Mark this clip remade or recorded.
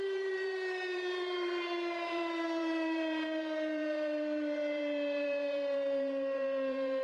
remade